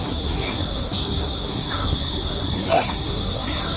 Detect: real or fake fake